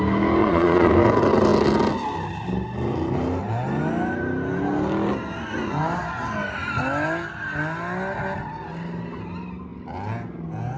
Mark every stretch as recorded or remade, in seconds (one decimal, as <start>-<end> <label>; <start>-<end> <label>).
0.0-0.4 recorded; 0.4-0.9 remade; 0.9-10.8 recorded